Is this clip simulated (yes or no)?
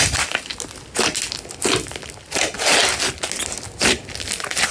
no